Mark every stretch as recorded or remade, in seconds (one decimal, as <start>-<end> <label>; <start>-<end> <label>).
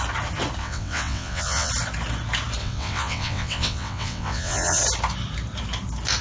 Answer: 0.0-0.6 recorded; 0.6-1.7 remade; 1.7-2.6 recorded; 2.6-4.8 remade; 4.8-6.2 recorded